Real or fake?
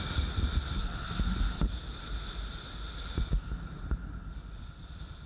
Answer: real